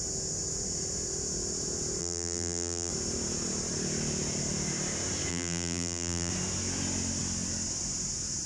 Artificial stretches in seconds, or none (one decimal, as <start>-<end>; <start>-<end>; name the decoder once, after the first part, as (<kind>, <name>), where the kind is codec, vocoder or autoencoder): 2.0-2.9 (vocoder, BigVGAN v2); 5.3-6.3

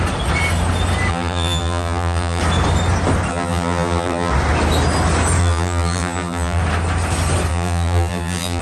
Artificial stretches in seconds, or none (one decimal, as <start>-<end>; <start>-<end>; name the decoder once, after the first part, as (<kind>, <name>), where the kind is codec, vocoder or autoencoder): 1.1-2.4 (vocoder, BigVGAN v2); 3.3-4.3; 5.4-6.6; 7.5-8.6

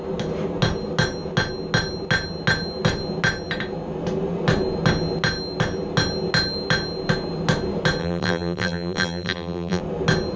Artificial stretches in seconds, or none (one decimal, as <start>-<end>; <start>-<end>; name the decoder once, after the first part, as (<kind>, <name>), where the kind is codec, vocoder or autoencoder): 8.0-9.8 (vocoder, BigVGAN v2)

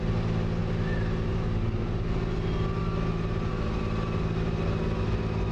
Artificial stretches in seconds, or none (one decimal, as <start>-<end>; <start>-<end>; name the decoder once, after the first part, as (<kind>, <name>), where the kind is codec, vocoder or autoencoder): none

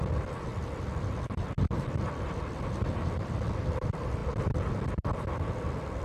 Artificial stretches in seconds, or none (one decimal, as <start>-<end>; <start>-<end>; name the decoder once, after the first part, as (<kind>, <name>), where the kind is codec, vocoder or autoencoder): 0.0-0.5 (vocoder, BigVGAN v2); 1.6-4.2

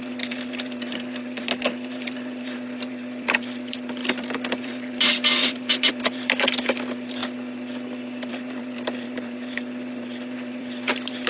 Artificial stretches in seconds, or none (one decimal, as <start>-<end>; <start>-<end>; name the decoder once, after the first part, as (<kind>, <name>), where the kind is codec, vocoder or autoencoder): 0.0-7.2 (vocoder, BigVGAN v2); 8.3-11.3

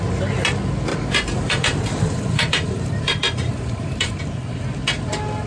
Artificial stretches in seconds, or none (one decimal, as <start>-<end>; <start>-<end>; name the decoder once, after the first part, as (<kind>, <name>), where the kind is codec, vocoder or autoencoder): 0.9-4.2 (vocoder, BigVGAN v2)